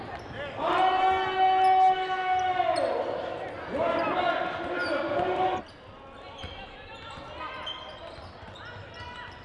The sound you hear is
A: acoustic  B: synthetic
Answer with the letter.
A